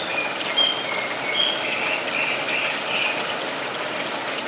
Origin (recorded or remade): remade